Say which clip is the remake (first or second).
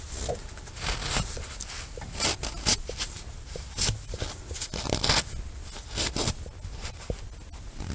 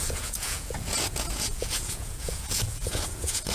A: second